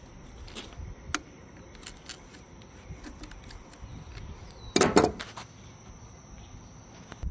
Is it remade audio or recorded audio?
recorded